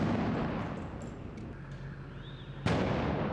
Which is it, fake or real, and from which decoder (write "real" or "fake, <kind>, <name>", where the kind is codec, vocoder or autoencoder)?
real